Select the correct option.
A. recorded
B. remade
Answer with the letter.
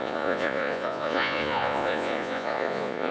B